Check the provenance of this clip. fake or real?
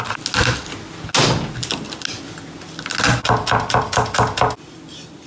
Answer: real